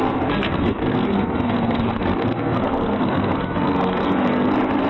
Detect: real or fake fake